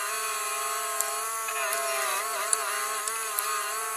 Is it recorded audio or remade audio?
recorded